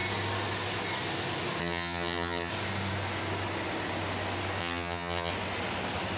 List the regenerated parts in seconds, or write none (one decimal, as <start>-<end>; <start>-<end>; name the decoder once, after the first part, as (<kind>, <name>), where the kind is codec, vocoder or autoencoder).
1.6-2.5 (vocoder, HiFi-GAN); 4.6-5.3